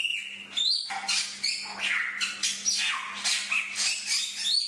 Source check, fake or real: real